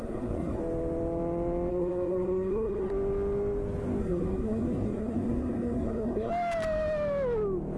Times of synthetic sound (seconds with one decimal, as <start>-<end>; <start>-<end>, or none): 0.0-0.6; 1.7-2.9; 4.0-6.3